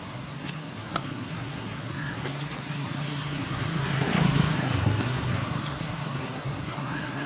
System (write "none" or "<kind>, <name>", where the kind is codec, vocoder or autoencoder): codec, SNAC